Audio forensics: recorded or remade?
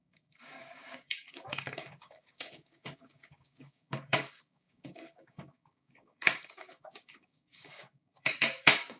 remade